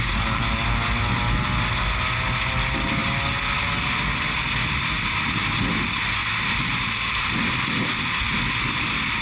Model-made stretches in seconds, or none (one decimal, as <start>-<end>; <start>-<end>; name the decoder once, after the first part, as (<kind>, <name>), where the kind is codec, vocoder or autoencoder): none